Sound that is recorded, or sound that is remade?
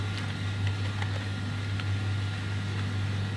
recorded